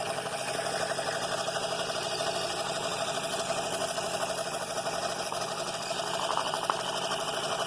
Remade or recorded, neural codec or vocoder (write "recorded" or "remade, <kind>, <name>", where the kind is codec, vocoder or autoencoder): recorded